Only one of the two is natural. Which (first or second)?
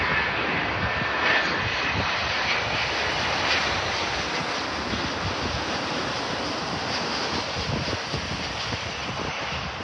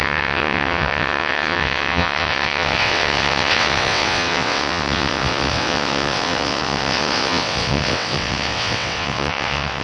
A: first